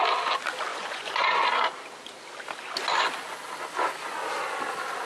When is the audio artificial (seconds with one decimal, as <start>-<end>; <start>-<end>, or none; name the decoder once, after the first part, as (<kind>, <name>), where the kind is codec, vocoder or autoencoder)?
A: 0.7-1.4 (vocoder, Vocos)

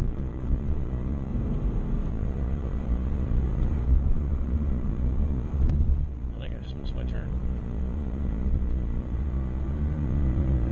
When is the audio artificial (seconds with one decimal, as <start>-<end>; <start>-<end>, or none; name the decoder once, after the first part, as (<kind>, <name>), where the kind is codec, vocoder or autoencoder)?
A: 0.0-1.3 (vocoder, Vocos); 2.1-10.7

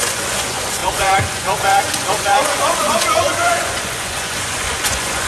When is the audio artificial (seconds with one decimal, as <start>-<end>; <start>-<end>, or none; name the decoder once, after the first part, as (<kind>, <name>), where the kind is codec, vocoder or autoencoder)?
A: 0.0-5.3 (vocoder, Vocos)

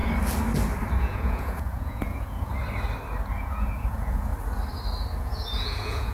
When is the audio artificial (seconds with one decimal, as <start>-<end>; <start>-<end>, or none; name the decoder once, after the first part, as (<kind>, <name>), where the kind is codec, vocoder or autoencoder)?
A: 1.0-2.5 (vocoder, Vocos); 3.3-4.3; 5.2-6.1

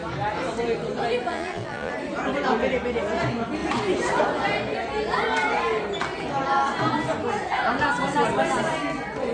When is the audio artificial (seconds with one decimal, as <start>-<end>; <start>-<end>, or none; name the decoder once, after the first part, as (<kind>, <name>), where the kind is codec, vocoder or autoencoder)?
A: 1.3-1.9 (vocoder, Vocos)

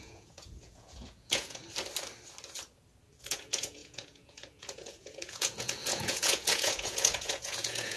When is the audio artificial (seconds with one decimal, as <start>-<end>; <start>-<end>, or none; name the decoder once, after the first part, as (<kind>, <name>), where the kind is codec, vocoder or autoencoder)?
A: 0.0-1.6 (vocoder, Vocos); 3.2-8.0

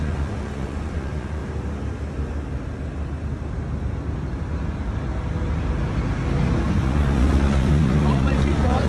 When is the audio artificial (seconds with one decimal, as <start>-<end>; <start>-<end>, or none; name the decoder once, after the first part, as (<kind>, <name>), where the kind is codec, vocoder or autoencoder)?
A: 0.0-1.4 (vocoder, Vocos); 6.7-8.9